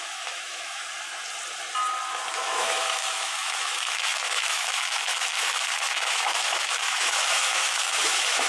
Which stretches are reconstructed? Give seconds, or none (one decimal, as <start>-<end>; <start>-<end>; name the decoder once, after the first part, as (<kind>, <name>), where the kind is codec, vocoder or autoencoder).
0.0-0.9 (autoencoder, DAC-VAE); 2.3-8.5